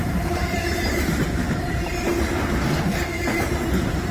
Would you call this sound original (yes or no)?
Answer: no